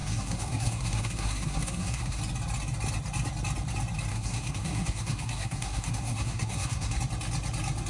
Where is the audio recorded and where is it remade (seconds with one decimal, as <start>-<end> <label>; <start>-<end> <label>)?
0.0-2.2 remade; 2.2-4.1 recorded; 4.1-7.0 remade; 7.0-7.9 recorded